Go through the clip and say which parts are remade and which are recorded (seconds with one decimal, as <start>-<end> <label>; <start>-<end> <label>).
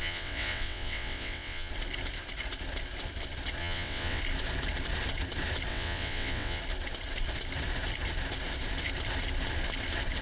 0.0-1.7 remade; 1.7-3.6 recorded; 3.6-4.2 remade; 4.2-5.7 recorded; 5.7-6.6 remade; 6.6-10.2 recorded